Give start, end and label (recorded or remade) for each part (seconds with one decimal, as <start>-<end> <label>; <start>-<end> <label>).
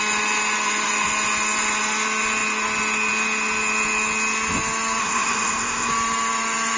0.0-5.0 recorded; 5.0-5.9 remade; 5.9-6.8 recorded